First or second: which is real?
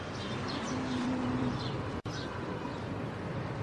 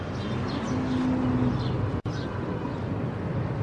second